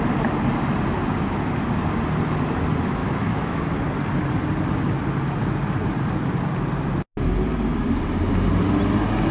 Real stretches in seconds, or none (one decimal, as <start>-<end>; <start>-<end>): 0.0-3.0; 3.6-9.3